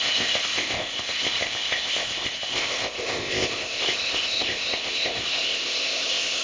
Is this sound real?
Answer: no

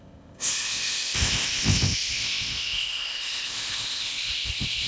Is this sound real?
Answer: no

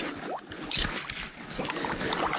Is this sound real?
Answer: yes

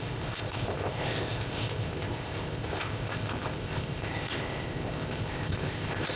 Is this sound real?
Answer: no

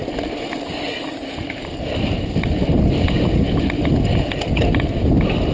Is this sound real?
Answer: yes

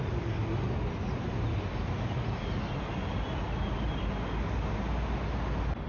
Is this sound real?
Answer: yes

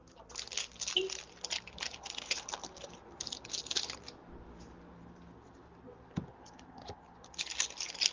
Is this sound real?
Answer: yes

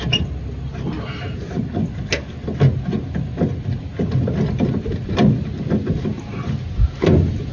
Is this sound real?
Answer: yes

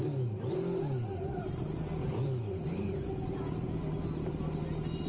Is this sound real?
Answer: yes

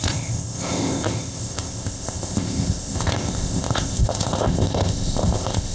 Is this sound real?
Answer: no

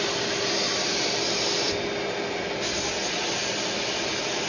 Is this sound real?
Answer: yes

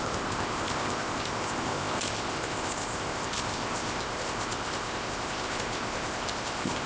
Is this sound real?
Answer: no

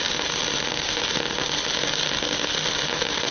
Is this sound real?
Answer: yes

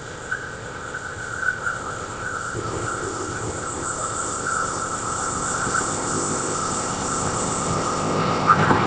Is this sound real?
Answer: no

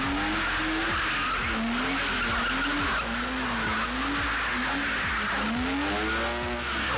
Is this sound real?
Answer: yes